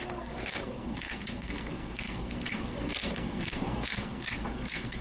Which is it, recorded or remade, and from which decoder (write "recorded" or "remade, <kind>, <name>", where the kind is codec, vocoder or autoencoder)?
remade, codec, SNAC